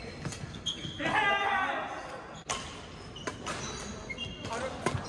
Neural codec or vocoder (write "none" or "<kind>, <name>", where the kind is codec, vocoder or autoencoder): none